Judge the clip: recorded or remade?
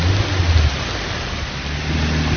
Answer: recorded